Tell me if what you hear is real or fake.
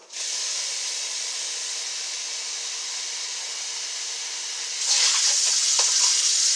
real